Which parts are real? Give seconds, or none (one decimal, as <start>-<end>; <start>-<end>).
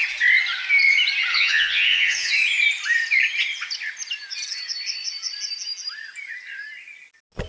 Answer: 0.0-1.3; 2.3-7.5